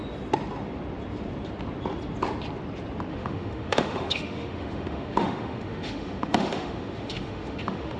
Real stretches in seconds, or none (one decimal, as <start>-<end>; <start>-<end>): 0.0-3.1